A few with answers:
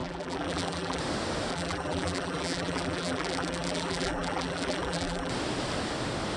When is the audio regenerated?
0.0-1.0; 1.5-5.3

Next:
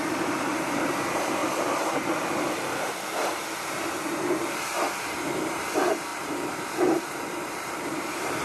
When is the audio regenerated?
0.0-1.4; 3.9-8.4